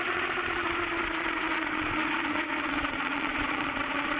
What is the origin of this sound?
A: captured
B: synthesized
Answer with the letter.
B